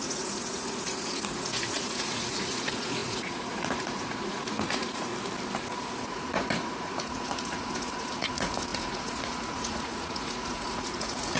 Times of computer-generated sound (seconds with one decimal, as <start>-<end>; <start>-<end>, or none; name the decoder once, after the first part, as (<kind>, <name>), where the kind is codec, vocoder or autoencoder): 0.0-5.1 (vocoder, Vocos); 5.8-11.4